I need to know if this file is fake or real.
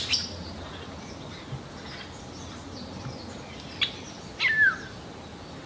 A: real